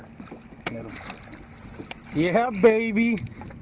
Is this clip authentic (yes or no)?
yes